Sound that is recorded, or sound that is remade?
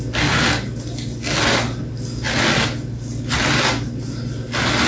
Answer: recorded